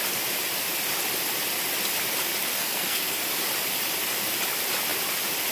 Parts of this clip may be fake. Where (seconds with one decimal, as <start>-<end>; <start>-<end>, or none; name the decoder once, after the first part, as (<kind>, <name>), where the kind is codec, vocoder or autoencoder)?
2.5-3.1 (codec, SNAC)